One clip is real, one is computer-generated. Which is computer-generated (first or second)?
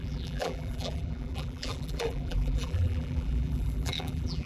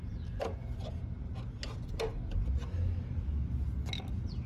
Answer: first